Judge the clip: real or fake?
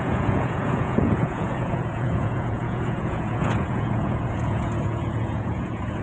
fake